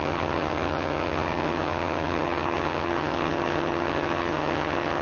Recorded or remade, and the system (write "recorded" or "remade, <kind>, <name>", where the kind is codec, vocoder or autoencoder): remade, vocoder, HiFi-GAN